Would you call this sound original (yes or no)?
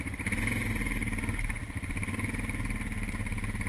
yes